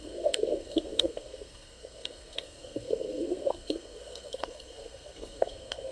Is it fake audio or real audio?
fake